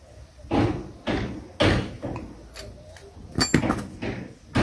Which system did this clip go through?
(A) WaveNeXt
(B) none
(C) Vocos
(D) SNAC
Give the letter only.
B